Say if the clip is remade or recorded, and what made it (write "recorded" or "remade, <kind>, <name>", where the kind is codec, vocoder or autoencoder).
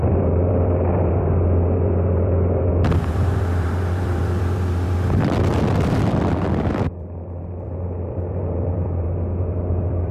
remade, vocoder, BigVGAN v2